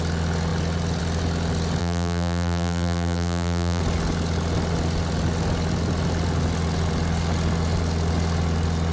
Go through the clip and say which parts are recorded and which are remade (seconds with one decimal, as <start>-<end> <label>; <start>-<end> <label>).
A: 0.0-1.8 recorded; 1.8-3.8 remade; 3.8-8.9 recorded